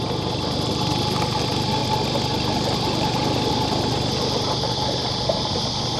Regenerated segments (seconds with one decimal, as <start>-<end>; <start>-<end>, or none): 0.0-1.8; 3.5-6.0